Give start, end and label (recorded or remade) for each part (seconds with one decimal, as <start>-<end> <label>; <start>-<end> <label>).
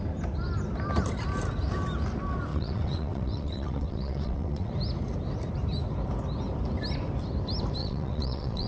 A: 0.0-2.5 recorded; 2.5-4.7 remade; 4.7-7.8 recorded; 7.8-8.7 remade